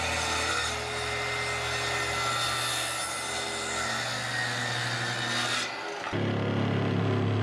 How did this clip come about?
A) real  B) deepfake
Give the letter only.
A